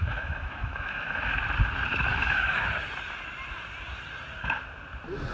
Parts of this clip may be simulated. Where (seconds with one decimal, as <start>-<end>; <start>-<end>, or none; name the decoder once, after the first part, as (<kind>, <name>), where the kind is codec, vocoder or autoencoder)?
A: 0.0-1.3 (autoencoder, DAC-VAE); 2.1-2.6